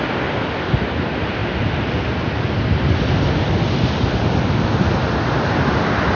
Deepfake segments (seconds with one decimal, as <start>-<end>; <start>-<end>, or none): none

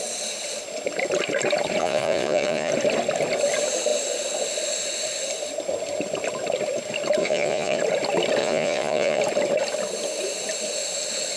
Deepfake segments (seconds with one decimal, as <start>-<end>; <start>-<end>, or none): 1.8-2.7; 7.2-7.8; 8.4-9.2